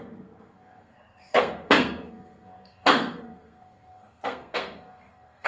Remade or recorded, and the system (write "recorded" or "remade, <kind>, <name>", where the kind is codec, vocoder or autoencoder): remade, codec, SNAC